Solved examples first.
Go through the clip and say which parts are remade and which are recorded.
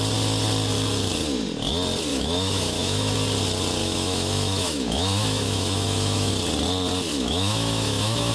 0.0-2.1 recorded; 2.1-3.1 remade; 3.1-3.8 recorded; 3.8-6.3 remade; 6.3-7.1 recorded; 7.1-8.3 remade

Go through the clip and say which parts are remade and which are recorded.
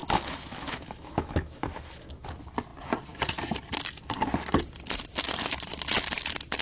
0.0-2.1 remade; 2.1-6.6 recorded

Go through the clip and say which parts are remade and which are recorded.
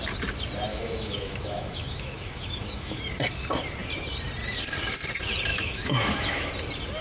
0.0-0.7 recorded; 0.7-3.0 remade; 3.0-5.5 recorded; 5.5-6.5 remade; 6.5-7.0 recorded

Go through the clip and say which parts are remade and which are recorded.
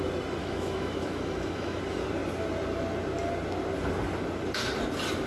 0.0-0.4 recorded; 0.4-1.8 remade; 1.8-5.3 recorded